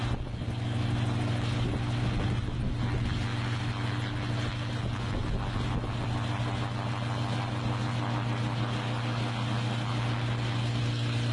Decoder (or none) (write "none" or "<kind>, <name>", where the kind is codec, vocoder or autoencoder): none